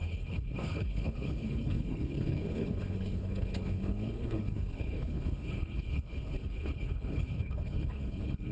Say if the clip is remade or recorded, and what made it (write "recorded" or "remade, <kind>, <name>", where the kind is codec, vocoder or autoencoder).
remade, codec, HILCodec